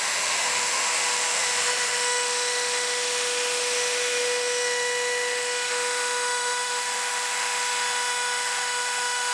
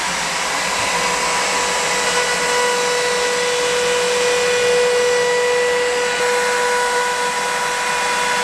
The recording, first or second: second